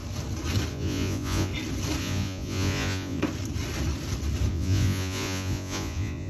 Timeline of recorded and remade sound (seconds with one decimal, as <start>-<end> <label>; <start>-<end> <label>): 0.0-0.7 recorded; 0.7-1.5 remade; 1.5-2.0 recorded; 2.0-3.2 remade; 3.2-4.5 recorded; 4.5-6.3 remade